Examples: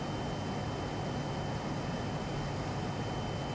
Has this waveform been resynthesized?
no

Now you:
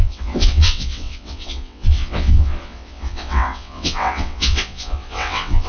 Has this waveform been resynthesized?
yes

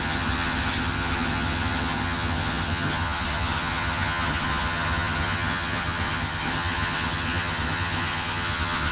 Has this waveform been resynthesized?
yes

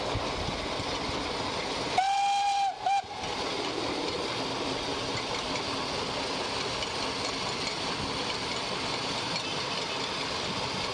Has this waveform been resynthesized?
no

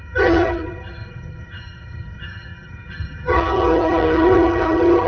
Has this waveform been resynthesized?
yes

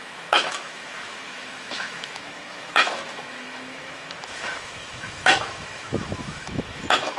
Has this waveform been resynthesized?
yes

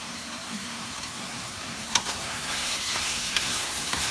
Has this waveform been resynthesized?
yes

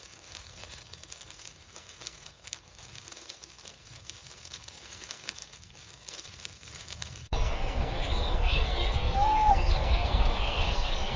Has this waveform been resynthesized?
yes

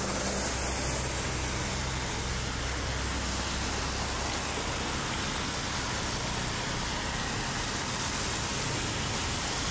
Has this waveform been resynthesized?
no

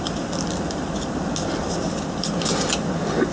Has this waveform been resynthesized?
no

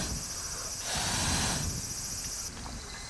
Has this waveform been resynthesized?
no